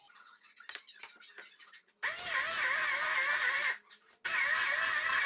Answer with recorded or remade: recorded